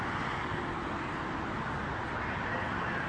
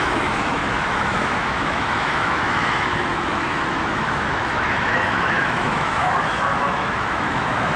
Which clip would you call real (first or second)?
first